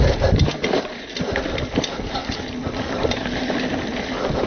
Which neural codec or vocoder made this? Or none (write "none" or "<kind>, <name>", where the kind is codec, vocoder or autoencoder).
vocoder, BigVGAN v2